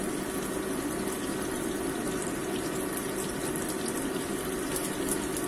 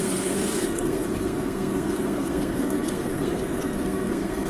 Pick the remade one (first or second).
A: second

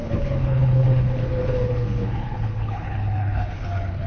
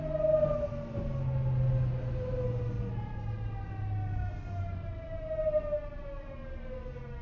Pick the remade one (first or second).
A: first